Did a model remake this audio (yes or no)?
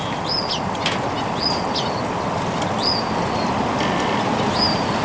no